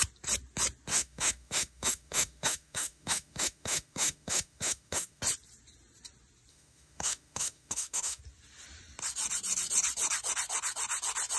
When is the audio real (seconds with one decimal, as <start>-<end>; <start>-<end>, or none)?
0.0-0.9; 5.2-6.5; 8.2-11.4